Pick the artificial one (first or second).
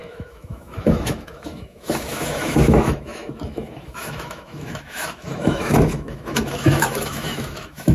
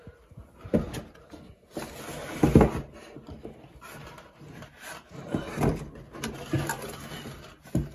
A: first